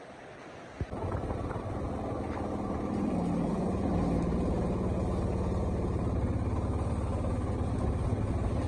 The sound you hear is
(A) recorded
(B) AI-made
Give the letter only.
A